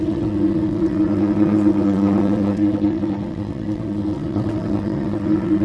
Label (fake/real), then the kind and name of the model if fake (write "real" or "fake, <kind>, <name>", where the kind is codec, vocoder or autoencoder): fake, vocoder, WaveNeXt